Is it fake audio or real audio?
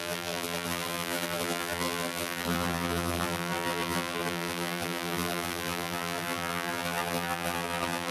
fake